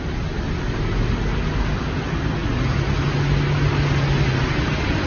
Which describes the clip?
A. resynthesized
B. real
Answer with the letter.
B